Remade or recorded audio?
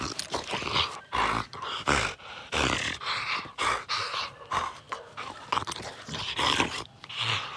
recorded